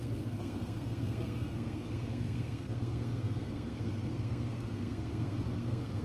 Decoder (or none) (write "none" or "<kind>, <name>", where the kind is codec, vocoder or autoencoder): codec, SNAC